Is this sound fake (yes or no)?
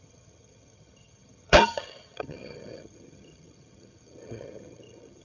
yes